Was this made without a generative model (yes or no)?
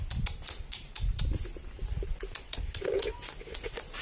no